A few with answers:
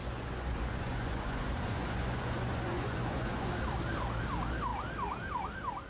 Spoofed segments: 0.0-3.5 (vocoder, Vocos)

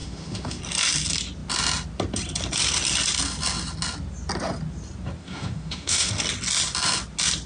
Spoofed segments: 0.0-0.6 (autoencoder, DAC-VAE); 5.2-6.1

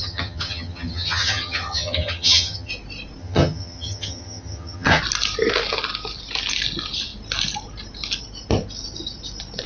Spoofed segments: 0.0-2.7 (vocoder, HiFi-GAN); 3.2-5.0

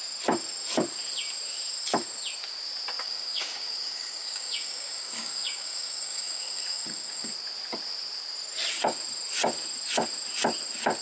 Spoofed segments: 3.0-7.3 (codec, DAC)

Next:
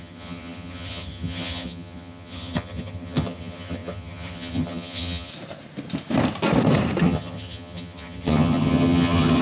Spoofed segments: 0.0-5.3 (vocoder, HiFi-GAN); 7.0-9.4

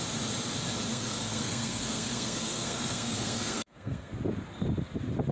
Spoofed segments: 0.9-4.1 (codec, SNAC)

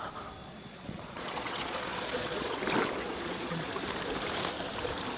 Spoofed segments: 0.4-2.6 (vocoder, Vocos); 3.0-3.7